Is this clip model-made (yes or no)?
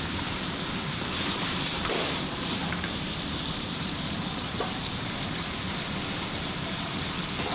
yes